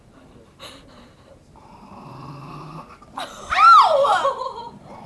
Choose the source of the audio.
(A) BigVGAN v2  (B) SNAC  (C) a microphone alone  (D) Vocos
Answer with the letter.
A